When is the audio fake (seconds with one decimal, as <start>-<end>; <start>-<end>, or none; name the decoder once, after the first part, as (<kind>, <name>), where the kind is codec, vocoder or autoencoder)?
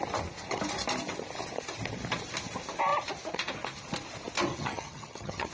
4.5-5.5 (vocoder, HiFi-GAN)